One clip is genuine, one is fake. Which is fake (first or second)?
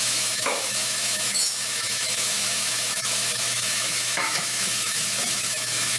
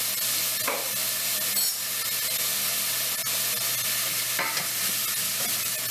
first